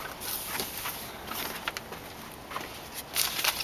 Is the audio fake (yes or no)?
no